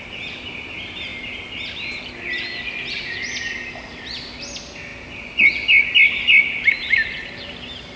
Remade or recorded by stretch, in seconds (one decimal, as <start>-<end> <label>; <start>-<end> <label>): 0.0-8.0 recorded